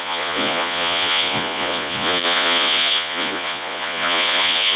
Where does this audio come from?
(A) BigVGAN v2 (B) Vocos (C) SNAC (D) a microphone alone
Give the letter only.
B